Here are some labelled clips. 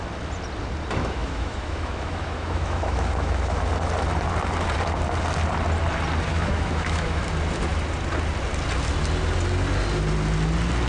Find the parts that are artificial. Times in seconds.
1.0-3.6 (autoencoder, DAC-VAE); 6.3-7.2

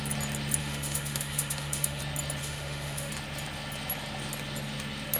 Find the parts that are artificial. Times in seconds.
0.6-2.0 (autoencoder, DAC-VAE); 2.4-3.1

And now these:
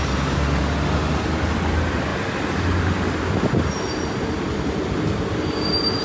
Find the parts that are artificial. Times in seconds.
none

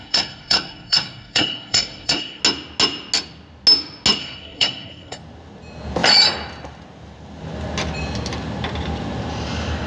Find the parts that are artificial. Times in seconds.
0.0-2.4 (codec, SNAC); 4.2-5.2